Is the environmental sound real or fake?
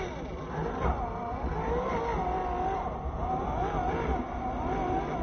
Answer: real